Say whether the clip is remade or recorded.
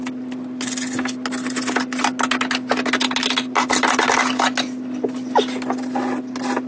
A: recorded